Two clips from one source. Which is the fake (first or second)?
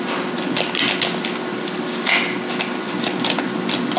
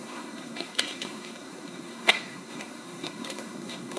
second